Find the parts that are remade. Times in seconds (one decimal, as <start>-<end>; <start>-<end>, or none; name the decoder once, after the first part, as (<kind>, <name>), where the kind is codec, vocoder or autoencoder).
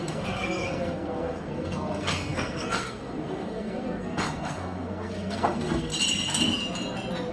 0.0-5.9 (codec, SNAC)